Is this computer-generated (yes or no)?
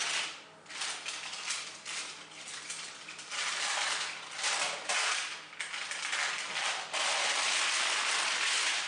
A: no